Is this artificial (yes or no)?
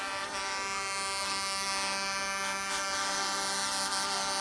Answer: no